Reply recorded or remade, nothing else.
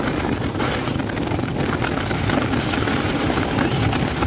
recorded